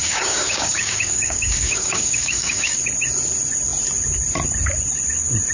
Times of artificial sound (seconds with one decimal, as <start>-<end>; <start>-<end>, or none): 0.0-2.8